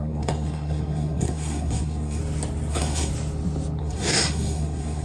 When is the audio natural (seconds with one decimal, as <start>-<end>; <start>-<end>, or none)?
2.2-2.7; 3.1-3.8